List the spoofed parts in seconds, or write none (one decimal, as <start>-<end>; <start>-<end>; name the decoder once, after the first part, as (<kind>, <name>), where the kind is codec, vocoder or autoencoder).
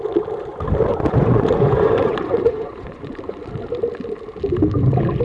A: 0.9-3.1 (vocoder, Vocos)